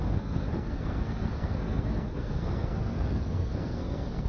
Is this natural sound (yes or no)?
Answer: no